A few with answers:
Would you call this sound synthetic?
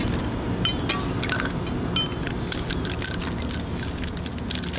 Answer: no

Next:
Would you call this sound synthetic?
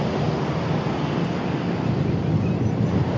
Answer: no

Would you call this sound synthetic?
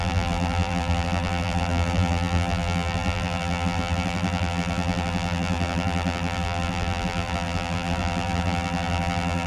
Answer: yes